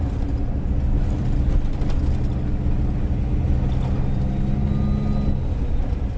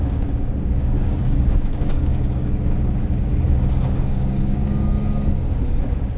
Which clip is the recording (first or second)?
first